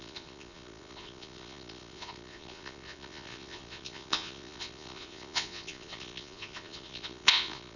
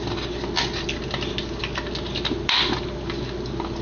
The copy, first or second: first